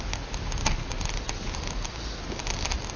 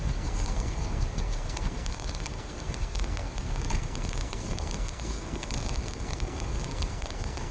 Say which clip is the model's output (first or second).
second